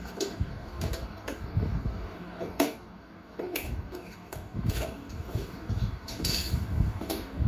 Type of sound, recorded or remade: remade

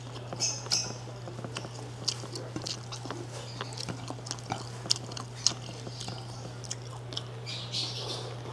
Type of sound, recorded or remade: recorded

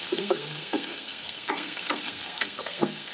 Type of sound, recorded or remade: remade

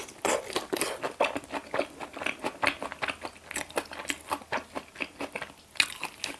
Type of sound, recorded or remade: recorded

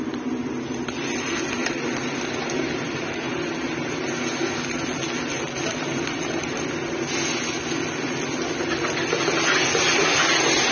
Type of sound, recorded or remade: recorded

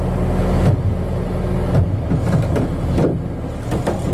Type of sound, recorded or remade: recorded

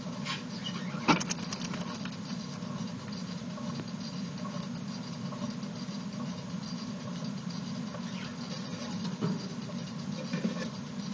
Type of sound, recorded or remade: recorded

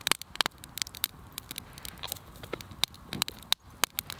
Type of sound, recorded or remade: recorded